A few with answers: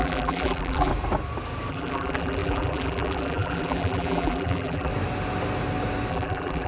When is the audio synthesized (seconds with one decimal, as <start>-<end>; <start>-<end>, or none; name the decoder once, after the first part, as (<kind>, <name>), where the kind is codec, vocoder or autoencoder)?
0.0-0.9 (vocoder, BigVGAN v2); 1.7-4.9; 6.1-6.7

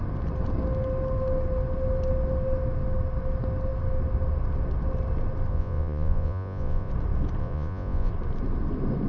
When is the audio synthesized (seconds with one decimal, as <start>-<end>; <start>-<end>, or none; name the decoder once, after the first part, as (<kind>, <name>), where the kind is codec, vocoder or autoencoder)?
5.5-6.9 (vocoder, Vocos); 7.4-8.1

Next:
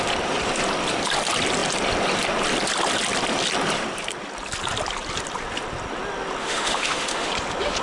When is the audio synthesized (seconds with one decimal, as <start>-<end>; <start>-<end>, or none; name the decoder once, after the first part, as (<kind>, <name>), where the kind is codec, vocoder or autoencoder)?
6.4-7.3 (autoencoder, DAC-VAE)

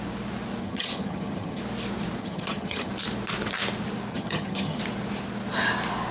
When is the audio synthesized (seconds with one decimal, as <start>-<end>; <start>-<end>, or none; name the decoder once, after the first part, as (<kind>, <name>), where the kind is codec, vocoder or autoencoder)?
0.6-1.6 (vocoder, HiFi-GAN); 2.2-2.9; 4.1-4.8